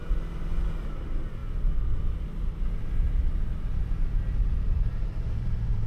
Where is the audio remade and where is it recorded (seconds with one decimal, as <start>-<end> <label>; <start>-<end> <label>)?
0.0-3.5 recorded; 3.5-5.9 remade